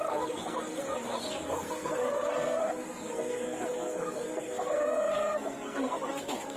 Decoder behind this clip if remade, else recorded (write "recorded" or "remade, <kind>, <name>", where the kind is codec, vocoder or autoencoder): remade, codec, SNAC